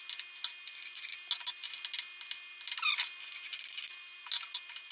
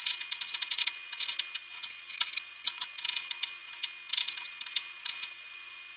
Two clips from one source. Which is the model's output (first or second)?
second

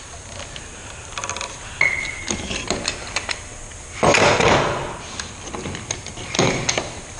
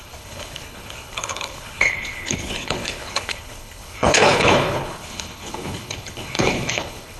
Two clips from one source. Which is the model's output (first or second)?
second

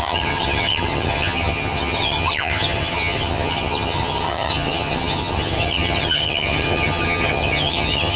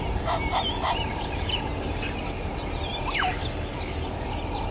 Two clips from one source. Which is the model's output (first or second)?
first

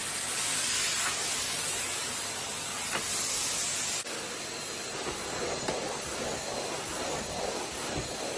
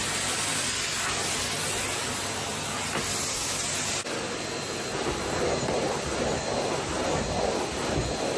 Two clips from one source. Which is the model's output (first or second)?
first